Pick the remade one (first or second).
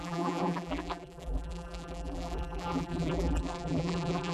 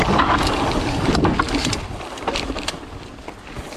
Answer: first